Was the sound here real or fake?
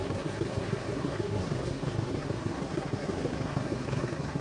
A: fake